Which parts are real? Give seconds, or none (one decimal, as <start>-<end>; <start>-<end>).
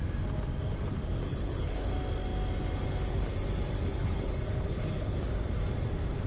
0.0-1.3; 1.9-3.9; 5.2-6.3